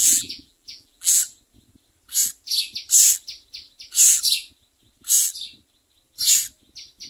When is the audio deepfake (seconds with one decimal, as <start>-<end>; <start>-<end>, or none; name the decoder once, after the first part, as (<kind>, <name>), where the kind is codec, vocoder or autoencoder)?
0.0-1.2 (vocoder, BigVGAN v2)

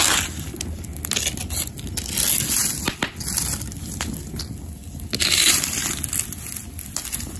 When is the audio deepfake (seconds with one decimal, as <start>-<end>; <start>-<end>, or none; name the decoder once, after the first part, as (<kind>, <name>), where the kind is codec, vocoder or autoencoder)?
none

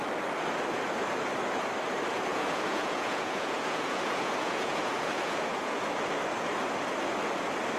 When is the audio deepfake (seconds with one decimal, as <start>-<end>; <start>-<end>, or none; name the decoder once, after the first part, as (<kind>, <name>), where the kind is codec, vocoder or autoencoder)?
2.3-5.8 (vocoder, Vocos)

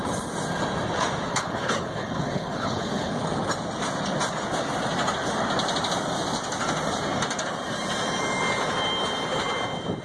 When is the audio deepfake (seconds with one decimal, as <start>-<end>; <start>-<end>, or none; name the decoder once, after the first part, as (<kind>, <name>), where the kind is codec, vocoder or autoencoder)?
1.3-3.2 (codec, HILCodec)